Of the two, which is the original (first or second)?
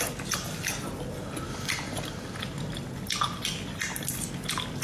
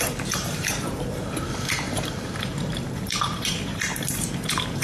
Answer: first